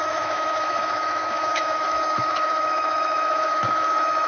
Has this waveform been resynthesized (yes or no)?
yes